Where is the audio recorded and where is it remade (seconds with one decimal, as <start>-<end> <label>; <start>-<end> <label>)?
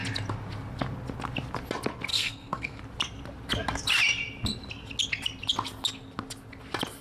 0.0-2.1 recorded; 2.1-2.8 remade; 2.8-7.0 recorded